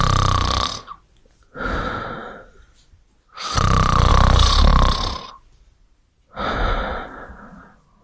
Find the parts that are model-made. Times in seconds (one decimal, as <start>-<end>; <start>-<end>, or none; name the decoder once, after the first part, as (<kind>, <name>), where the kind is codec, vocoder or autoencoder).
none